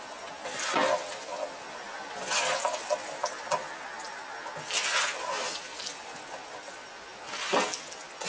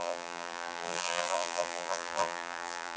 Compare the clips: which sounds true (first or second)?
first